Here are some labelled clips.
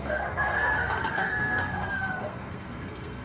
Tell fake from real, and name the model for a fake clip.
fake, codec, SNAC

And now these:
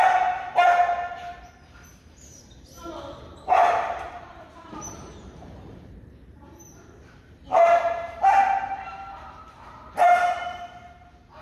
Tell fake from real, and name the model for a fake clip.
fake, vocoder, BigVGAN v2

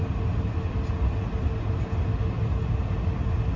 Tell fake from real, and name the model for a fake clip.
real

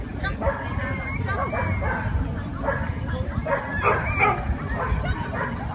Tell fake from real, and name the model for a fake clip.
real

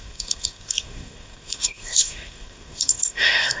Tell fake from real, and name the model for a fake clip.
fake, codec, SNAC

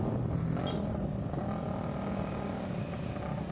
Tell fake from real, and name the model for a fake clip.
real